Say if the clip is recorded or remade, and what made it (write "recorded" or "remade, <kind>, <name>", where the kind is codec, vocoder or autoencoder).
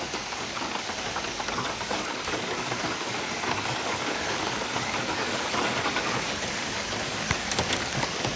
remade, codec, DAC